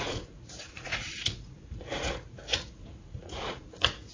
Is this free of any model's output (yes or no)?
no